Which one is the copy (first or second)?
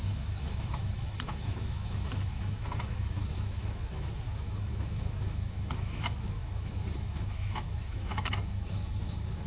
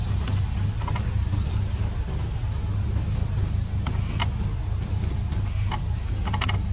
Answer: first